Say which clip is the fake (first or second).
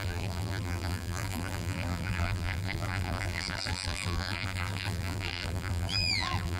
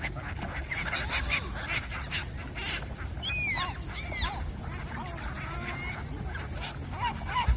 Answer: first